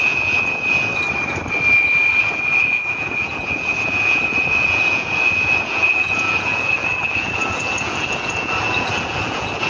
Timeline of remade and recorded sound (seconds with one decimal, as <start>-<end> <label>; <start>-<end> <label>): 0.0-0.9 remade; 0.9-2.2 recorded; 2.2-9.7 remade

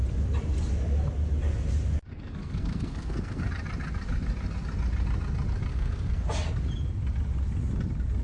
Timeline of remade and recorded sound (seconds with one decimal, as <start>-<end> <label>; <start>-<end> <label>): 0.0-2.1 recorded; 2.1-3.5 remade; 3.5-5.7 recorded; 5.7-6.3 remade; 6.3-8.2 recorded